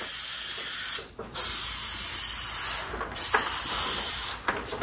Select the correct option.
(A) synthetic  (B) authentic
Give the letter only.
B